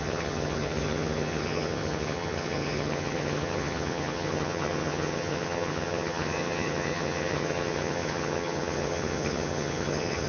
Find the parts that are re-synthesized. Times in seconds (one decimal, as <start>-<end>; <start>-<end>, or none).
0.0-10.3